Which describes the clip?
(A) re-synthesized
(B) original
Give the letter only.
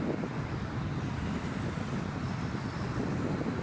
B